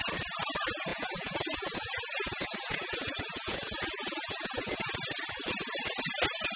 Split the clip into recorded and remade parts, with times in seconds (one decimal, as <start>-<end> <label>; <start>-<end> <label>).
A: 0.0-0.9 recorded; 0.9-4.9 remade; 4.9-6.6 recorded